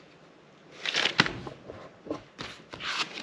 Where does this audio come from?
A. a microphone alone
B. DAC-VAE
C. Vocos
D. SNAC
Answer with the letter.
A